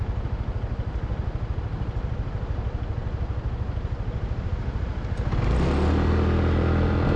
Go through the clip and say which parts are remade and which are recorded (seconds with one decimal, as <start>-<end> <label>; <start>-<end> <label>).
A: 0.0-7.2 recorded